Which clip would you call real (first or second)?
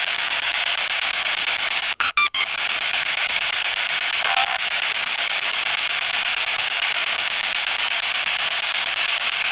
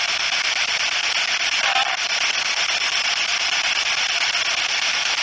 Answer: second